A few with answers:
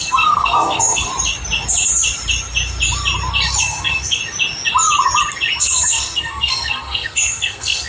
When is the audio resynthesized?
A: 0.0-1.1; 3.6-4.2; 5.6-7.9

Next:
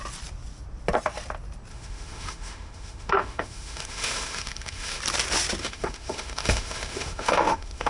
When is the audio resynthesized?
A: 1.7-5.0; 5.6-7.9

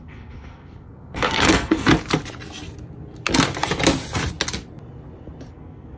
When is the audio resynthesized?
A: 0.0-1.9; 5.5-6.0